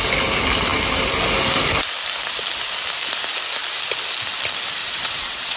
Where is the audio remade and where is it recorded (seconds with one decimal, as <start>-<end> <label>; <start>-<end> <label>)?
0.0-4.8 recorded; 4.8-5.6 remade